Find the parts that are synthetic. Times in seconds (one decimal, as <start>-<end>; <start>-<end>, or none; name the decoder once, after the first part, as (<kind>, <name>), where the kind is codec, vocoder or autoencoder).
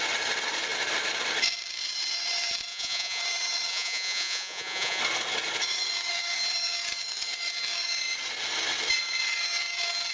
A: 2.7-3.2 (vocoder, Vocos); 3.7-5.0